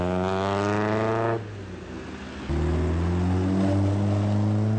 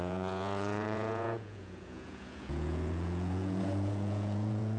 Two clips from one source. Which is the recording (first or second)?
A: first